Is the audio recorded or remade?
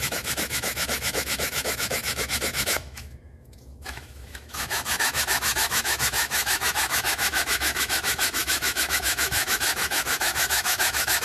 remade